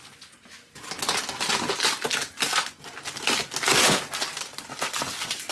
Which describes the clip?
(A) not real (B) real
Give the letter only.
B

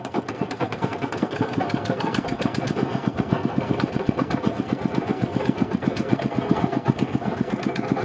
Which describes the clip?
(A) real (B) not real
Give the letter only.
B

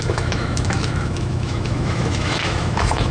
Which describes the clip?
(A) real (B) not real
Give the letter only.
B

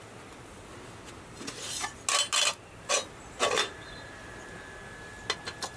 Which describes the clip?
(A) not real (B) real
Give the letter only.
B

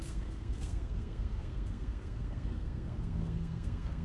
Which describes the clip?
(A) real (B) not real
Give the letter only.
B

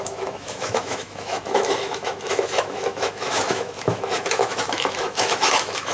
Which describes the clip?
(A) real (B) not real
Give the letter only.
B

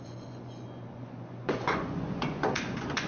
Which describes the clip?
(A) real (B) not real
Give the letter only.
B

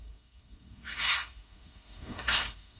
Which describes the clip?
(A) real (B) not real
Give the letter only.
B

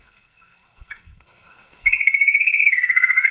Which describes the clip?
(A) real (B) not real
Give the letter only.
B